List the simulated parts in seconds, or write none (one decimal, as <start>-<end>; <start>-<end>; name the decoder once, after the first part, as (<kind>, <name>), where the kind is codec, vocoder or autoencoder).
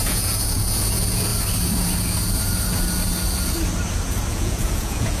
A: 0.0-1.3 (vocoder, Vocos); 4.3-5.2